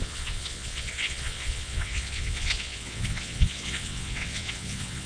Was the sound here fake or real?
fake